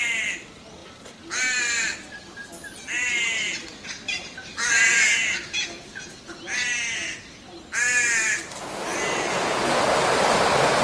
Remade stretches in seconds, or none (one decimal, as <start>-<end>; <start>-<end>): 4.9-6.2; 8.9-9.8